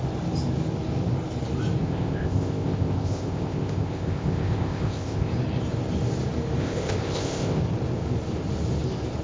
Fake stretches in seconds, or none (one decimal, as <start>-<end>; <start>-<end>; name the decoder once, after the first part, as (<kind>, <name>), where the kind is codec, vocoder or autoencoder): 1.8-5.3 (codec, ZipCodec); 6.6-7.6